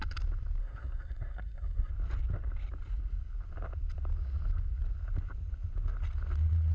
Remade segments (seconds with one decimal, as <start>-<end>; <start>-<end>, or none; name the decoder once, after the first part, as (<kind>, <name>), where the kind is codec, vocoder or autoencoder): 0.6-1.9 (codec, SNAC)